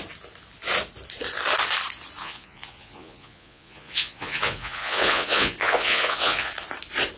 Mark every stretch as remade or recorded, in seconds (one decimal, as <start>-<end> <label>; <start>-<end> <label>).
0.0-2.2 recorded; 2.2-6.5 remade; 6.5-7.2 recorded